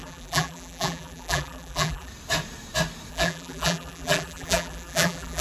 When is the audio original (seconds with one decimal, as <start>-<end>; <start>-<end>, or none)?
2.1-3.1